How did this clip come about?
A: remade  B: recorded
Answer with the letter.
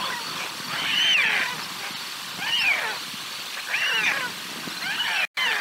B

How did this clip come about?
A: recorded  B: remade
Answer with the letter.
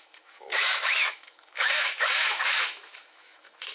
B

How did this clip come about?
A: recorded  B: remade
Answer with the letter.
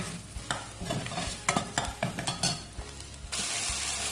A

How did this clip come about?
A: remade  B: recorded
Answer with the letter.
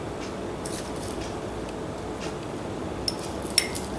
B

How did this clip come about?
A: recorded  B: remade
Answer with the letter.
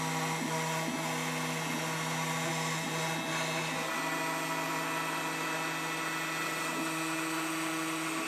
A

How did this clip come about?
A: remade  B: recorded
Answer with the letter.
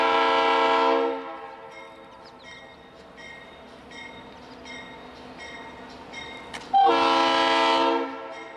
B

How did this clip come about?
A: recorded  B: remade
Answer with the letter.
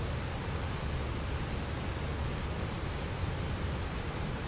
A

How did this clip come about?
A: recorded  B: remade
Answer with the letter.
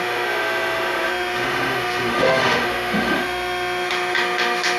B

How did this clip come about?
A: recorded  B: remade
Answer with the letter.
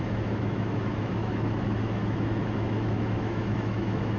B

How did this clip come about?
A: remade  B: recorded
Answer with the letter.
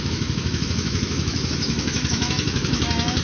A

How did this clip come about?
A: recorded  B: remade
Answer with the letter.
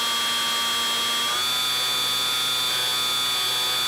A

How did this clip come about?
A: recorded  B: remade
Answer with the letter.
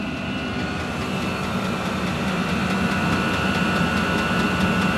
A